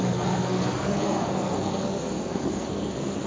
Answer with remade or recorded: remade